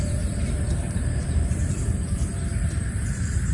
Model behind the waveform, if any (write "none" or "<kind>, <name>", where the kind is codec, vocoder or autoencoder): vocoder, BigVGAN v2